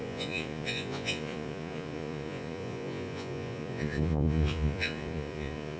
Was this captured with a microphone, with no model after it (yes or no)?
no